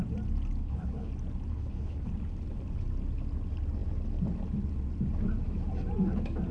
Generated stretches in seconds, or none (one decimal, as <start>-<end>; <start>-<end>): 0.6-1.1; 1.5-2.1